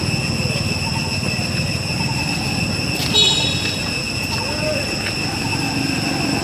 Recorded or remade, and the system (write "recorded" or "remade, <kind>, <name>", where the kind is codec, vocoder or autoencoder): recorded